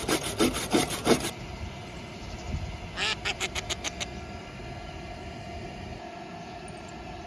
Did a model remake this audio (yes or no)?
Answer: no